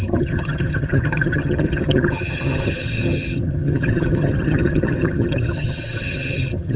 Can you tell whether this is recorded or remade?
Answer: remade